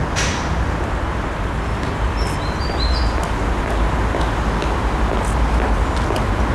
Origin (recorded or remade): recorded